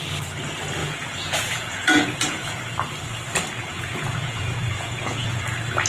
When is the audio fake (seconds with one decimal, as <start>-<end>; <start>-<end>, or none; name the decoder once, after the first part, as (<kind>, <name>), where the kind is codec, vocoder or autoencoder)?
0.8-2.6 (vocoder, Vocos); 3.7-5.4